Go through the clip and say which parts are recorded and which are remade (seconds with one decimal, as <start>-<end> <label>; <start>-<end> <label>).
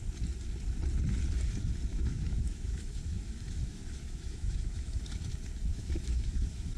0.0-1.9 recorded; 1.9-5.0 remade; 5.0-5.7 recorded; 5.7-6.8 remade